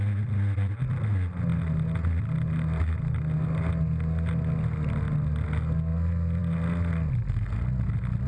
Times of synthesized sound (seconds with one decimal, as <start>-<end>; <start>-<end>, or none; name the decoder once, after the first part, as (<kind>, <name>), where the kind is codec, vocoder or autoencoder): none